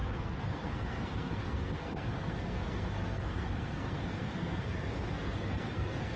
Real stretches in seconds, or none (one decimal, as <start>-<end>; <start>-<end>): none